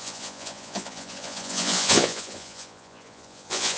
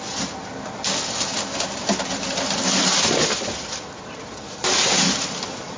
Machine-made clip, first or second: first